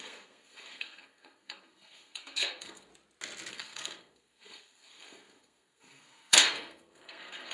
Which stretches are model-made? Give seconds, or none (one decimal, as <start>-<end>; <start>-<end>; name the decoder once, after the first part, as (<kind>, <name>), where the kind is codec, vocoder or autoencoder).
0.0-2.9 (codec, SNAC); 3.5-7.5